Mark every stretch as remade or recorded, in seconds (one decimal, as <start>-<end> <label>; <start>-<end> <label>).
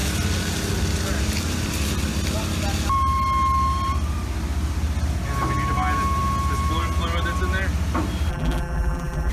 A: 0.0-8.3 recorded; 8.3-9.3 remade